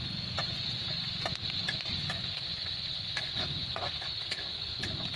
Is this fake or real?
fake